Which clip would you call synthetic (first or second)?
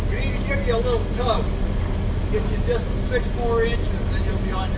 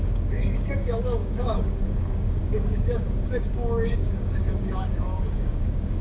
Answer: second